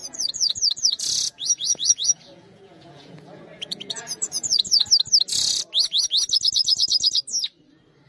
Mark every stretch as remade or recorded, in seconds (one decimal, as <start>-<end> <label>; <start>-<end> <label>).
0.0-4.9 remade; 4.9-6.6 recorded; 6.6-7.2 remade; 7.2-8.1 recorded